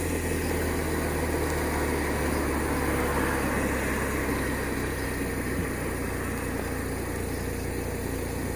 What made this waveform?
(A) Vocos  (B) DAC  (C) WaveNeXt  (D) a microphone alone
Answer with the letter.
D